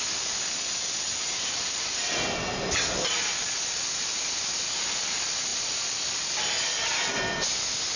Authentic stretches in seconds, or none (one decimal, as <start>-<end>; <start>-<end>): 0.0-5.5; 7.2-8.0